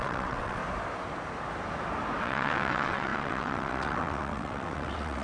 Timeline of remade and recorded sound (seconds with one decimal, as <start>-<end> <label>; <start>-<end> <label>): 0.0-0.6 remade; 0.6-2.2 recorded; 2.2-5.2 remade

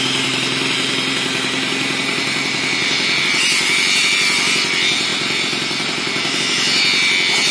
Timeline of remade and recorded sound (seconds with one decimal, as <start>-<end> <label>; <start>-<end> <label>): 0.0-7.5 recorded

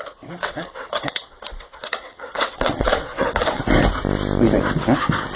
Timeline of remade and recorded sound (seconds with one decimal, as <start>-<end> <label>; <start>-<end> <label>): 0.0-0.4 recorded; 0.4-3.6 remade; 3.6-5.4 recorded

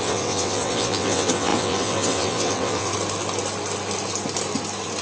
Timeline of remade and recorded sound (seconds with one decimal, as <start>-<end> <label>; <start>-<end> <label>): 0.0-2.9 remade; 2.9-5.0 recorded

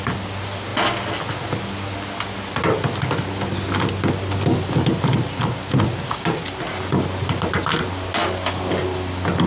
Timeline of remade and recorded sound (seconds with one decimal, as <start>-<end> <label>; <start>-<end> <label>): 0.0-9.5 recorded